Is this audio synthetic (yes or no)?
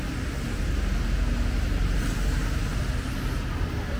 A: no